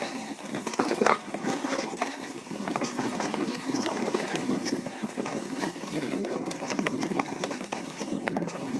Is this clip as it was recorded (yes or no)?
no